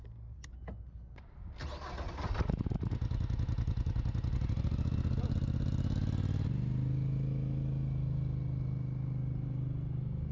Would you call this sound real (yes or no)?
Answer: yes